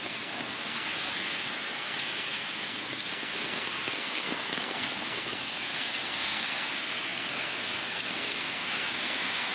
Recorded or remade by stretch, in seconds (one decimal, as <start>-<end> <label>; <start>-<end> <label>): 0.0-9.5 remade